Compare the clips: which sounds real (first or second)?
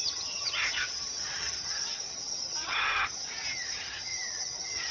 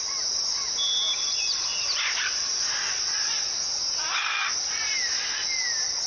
second